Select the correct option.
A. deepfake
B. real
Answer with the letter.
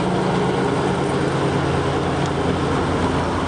B